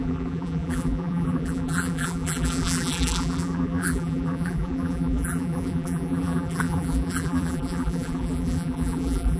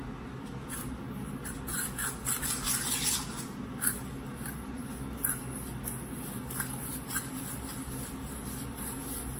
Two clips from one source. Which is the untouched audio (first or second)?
second